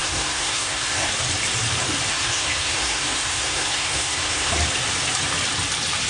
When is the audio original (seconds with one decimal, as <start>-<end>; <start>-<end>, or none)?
1.1-2.1; 4.5-6.1